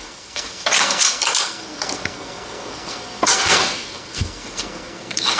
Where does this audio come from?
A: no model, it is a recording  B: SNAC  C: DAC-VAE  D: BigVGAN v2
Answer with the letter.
B